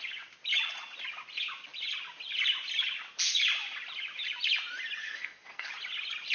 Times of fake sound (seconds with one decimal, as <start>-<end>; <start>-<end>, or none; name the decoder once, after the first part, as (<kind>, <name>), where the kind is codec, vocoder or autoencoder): 5.0-5.7 (codec, SNAC)